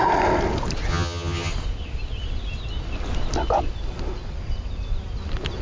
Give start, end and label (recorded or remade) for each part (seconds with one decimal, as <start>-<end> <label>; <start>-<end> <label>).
0.0-0.9 recorded; 0.9-1.5 remade; 1.5-5.6 recorded